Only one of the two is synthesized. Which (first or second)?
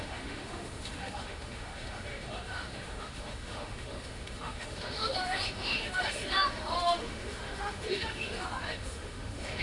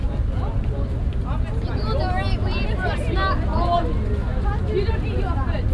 first